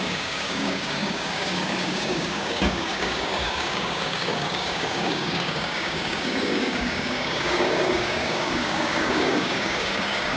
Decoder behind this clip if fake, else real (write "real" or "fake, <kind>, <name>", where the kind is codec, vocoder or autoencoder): fake, codec, DAC